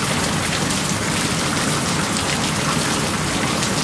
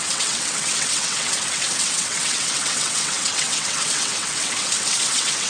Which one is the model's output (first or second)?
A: second